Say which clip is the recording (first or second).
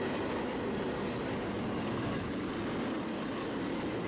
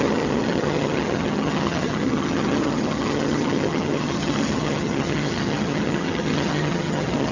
first